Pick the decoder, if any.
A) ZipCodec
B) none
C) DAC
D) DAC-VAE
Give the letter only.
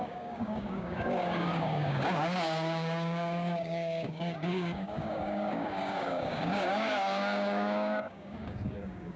C